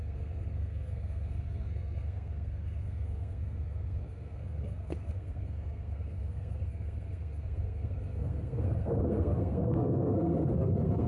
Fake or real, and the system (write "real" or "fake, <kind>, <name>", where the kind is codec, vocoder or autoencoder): fake, codec, SNAC